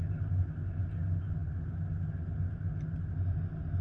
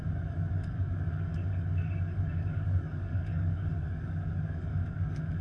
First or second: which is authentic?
first